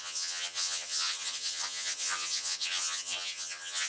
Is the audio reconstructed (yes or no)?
yes